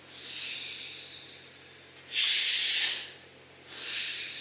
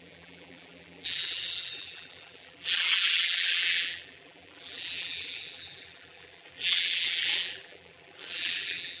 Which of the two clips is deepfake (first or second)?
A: second